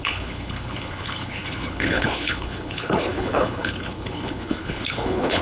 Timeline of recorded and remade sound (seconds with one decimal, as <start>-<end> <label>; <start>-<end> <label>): 0.0-5.4 remade